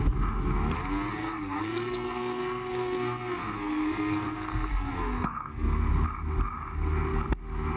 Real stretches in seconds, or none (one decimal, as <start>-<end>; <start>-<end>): 0.0-1.2; 5.9-7.8